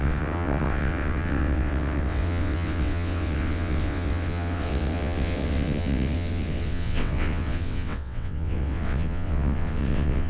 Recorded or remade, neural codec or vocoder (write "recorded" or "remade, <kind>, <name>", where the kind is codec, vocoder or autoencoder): remade, vocoder, WaveNeXt